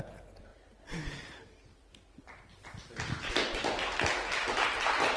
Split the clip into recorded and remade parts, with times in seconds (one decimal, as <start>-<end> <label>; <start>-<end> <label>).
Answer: 0.0-0.5 recorded; 0.5-3.6 remade; 3.6-5.2 recorded